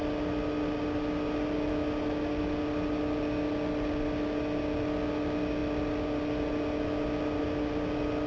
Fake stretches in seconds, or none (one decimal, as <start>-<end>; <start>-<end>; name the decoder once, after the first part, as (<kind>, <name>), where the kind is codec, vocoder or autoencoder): none